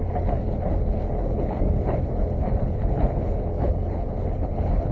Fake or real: fake